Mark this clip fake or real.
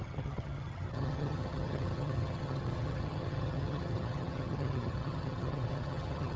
fake